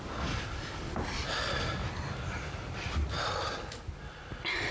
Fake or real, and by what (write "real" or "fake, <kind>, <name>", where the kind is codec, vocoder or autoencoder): real